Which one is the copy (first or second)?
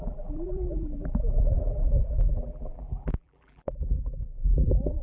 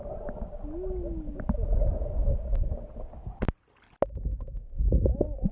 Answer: first